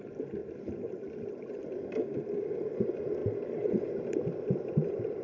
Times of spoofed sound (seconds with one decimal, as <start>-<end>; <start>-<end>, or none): none